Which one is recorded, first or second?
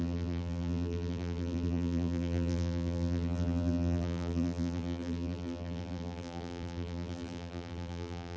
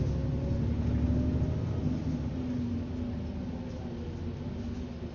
second